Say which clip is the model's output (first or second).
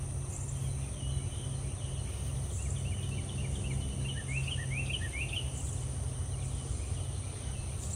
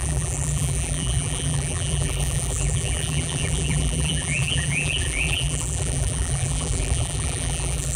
second